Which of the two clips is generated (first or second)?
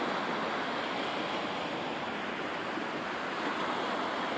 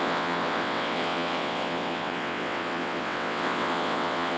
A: second